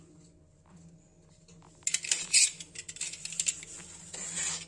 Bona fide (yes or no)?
yes